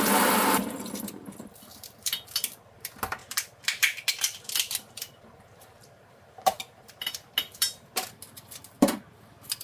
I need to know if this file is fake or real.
fake